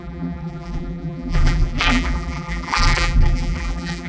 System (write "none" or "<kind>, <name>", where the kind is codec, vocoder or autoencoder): vocoder, BigVGAN v2